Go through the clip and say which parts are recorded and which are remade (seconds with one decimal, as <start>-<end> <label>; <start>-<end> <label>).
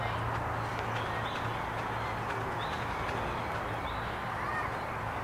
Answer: 0.0-5.2 recorded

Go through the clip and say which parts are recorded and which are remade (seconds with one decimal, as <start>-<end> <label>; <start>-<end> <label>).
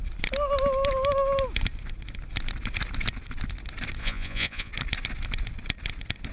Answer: 0.0-4.0 recorded; 4.0-4.7 remade; 4.7-6.3 recorded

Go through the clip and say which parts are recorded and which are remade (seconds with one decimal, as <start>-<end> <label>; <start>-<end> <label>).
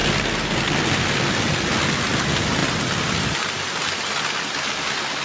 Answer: 0.0-5.2 recorded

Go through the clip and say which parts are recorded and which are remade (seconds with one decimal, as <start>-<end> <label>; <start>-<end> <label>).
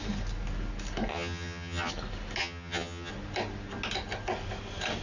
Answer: 0.0-1.1 recorded; 1.1-1.9 remade; 1.9-2.4 recorded; 2.4-3.1 remade; 3.1-5.0 recorded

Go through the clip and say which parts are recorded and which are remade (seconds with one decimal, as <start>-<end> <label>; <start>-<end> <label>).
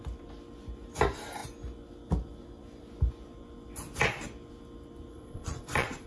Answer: 0.0-5.1 recorded; 5.1-6.1 remade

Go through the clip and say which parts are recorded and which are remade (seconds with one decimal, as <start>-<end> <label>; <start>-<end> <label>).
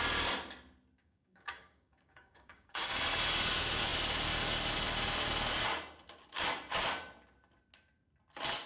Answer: 0.0-1.0 recorded; 1.0-3.0 remade; 3.0-8.7 recorded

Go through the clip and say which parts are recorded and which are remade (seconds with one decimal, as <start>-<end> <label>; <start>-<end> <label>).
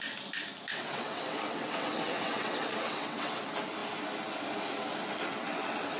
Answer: 0.0-0.7 recorded; 0.7-3.4 remade; 3.4-5.4 recorded; 5.4-6.0 remade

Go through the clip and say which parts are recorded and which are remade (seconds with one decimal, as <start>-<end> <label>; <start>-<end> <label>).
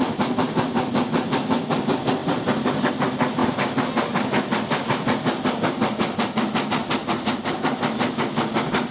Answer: 0.0-8.9 recorded